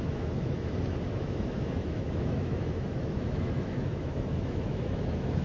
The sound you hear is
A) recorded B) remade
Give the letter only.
B